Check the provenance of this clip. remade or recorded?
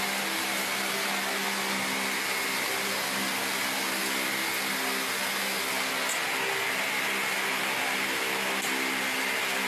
recorded